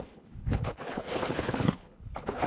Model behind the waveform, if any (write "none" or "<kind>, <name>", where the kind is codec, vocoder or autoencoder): codec, HILCodec